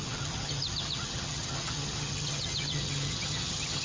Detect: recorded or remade remade